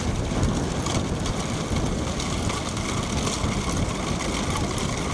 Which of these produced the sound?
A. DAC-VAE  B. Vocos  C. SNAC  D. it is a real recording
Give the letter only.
D